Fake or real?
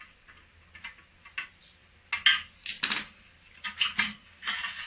real